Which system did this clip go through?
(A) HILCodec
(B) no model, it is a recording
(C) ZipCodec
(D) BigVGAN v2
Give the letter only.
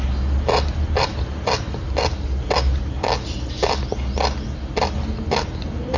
B